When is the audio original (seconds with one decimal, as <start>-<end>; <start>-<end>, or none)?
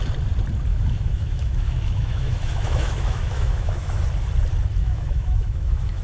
0.0-0.7; 4.0-4.8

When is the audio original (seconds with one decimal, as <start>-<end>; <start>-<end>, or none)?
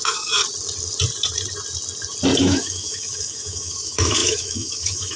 0.4-2.4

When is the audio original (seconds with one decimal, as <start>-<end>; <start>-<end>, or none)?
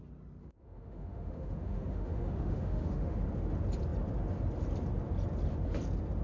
0.0-0.4; 3.2-6.2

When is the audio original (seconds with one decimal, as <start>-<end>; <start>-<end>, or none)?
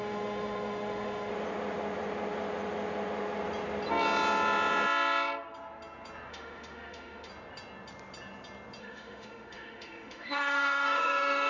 1.3-6.3; 7.3-8.8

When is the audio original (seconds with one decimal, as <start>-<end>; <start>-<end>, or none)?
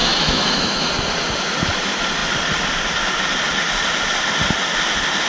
0.9-5.3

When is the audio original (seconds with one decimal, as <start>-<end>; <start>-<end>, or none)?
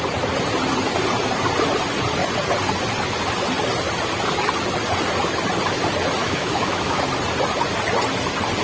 0.0-6.2; 7.0-8.6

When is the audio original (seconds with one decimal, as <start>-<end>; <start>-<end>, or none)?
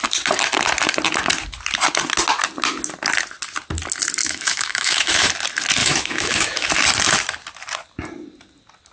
0.0-4.2; 5.3-5.8; 6.7-8.9